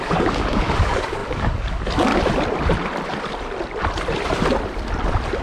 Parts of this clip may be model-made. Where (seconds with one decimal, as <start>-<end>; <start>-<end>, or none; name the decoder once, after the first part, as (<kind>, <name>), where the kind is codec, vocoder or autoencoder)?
0.0-2.1 (codec, DAC)